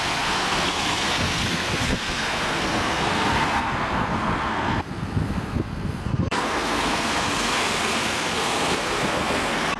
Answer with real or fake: fake